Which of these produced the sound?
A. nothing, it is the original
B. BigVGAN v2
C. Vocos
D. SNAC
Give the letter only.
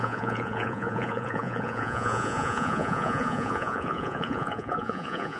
C